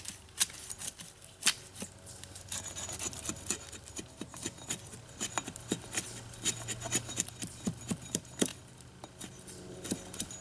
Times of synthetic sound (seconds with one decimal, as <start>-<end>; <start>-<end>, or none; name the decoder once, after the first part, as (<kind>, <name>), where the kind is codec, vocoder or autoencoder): none